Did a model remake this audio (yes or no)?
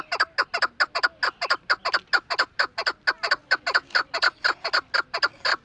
no